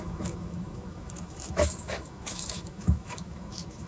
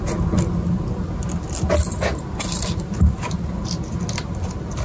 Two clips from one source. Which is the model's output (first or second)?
first